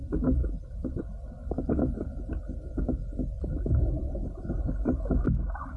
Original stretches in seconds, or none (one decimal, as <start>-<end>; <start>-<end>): 0.0-5.8